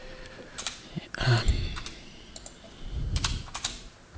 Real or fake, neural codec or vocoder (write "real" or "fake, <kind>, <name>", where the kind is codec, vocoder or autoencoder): fake, vocoder, BigVGAN v2